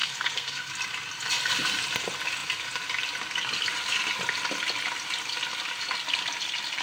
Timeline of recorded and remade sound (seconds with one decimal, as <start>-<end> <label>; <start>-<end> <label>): 0.0-0.7 remade; 0.7-6.8 recorded